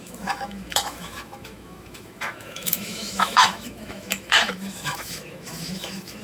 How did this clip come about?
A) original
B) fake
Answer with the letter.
B